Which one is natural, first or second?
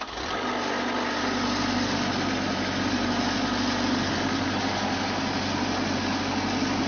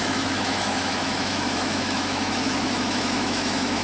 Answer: first